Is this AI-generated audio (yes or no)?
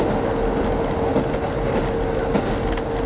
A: no